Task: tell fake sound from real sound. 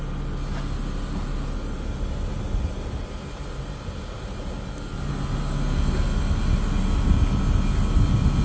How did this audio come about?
real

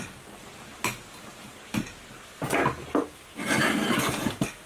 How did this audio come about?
real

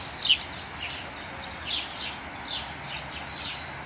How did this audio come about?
real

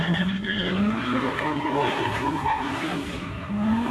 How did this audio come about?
fake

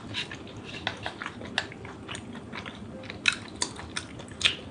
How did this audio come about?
real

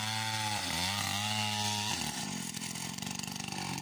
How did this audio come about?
fake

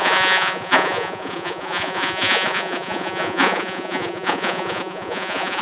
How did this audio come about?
fake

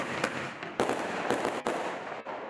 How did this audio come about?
real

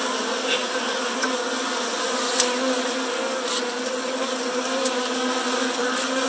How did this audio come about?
real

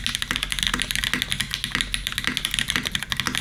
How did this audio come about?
real